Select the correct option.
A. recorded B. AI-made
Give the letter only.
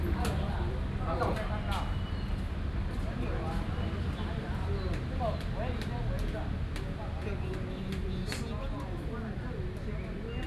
A